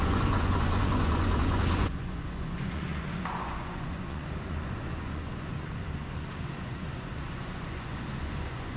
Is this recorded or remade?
remade